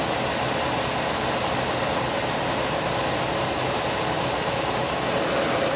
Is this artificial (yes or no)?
no